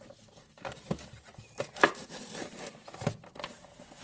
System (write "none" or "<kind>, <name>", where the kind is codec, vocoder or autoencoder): none